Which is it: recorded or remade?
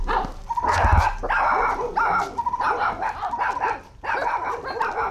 recorded